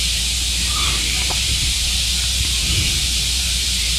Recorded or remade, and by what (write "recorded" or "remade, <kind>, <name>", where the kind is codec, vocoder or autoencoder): remade, vocoder, BigVGAN v2